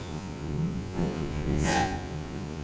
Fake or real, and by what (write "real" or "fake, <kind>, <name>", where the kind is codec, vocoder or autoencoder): fake, vocoder, Vocos